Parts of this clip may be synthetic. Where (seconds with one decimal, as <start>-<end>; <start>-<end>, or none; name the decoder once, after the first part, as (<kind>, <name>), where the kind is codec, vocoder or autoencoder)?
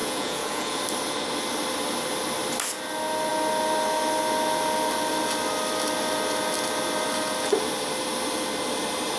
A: 0.0-0.8 (vocoder, Vocos)